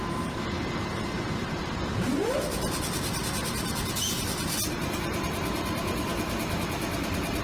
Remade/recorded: recorded